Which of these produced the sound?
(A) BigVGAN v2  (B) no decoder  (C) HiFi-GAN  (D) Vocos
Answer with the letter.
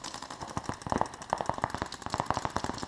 B